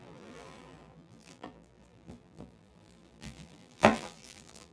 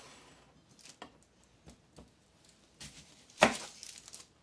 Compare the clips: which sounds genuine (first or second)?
second